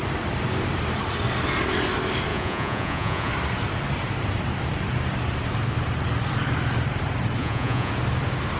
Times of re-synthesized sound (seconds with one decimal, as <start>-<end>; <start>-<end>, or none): 2.3-3.3; 7.4-7.9